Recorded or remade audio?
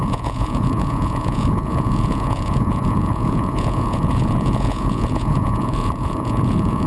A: remade